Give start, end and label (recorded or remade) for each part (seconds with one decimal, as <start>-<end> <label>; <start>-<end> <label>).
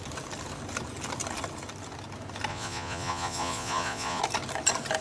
0.0-2.5 recorded; 2.5-4.2 remade; 4.2-5.0 recorded